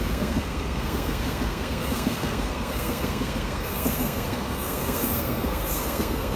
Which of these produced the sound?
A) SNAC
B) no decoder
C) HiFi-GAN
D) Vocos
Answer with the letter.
A